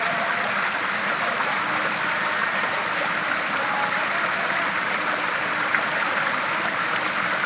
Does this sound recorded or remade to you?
recorded